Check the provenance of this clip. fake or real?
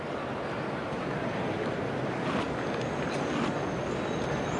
real